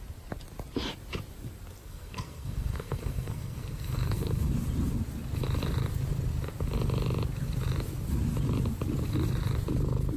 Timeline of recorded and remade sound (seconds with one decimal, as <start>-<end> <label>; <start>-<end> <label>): 0.0-1.8 recorded; 1.8-4.5 remade; 4.5-10.2 recorded